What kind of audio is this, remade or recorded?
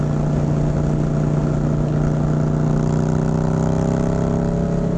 recorded